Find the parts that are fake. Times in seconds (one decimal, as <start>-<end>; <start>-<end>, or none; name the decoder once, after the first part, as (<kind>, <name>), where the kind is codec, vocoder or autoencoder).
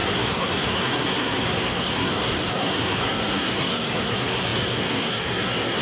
0.0-5.8 (codec, SNAC)